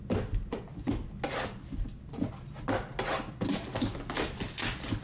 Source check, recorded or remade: recorded